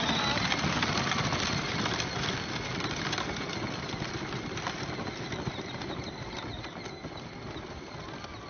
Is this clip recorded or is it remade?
recorded